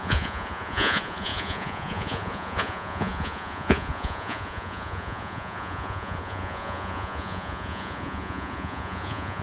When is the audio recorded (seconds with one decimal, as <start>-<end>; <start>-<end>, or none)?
none